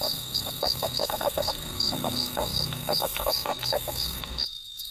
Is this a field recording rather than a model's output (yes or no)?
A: no